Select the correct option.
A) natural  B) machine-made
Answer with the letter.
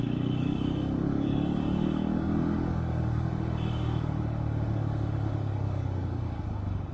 B